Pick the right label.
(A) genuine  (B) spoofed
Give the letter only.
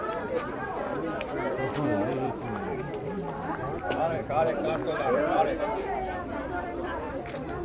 B